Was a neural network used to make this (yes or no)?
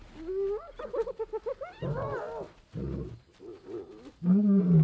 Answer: no